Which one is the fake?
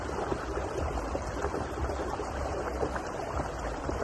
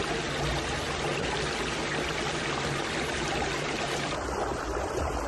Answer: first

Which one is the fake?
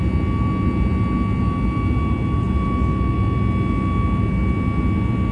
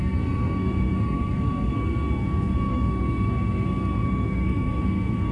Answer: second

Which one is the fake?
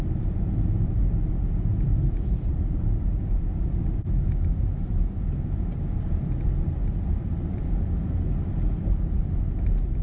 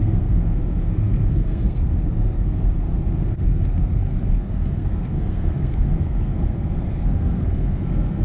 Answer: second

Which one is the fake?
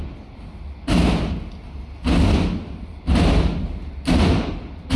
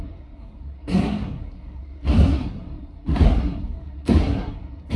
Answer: second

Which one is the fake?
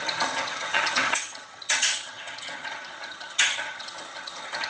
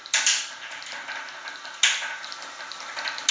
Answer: first